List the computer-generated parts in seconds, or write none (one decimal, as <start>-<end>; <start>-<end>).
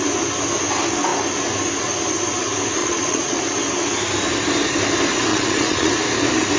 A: 2.8-3.4; 5.3-5.9